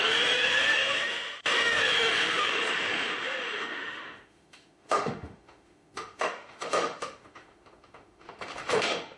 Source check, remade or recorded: remade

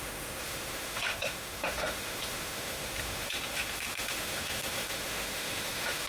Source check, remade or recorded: remade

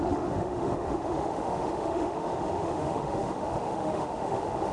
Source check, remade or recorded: remade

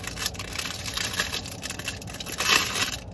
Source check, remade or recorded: recorded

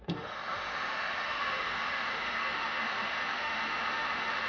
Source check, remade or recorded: remade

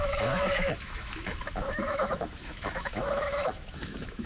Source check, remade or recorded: remade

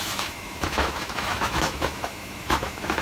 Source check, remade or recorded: remade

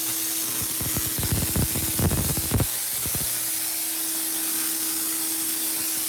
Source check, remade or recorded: recorded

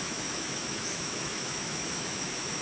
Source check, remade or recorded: remade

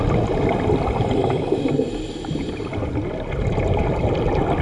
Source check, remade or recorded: recorded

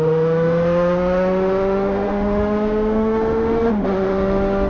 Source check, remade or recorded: remade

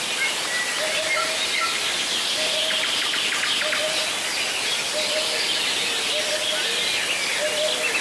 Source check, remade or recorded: recorded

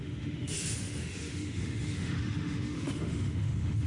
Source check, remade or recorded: remade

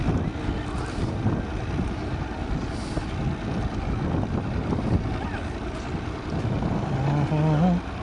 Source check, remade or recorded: recorded